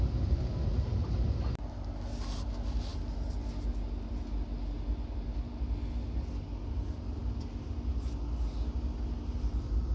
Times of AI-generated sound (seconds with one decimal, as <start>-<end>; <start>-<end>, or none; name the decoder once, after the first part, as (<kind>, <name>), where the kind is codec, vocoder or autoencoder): none